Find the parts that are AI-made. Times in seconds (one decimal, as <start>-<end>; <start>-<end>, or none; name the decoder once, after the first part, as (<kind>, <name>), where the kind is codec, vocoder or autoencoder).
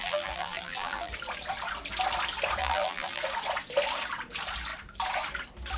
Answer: 0.0-1.1 (vocoder, BigVGAN v2); 2.6-3.2